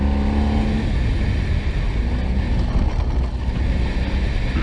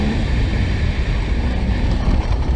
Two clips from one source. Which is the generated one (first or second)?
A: second